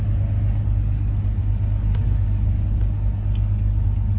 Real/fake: real